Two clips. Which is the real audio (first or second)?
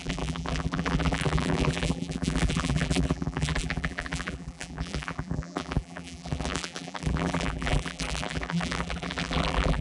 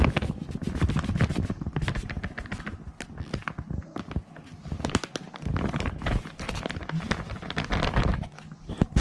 second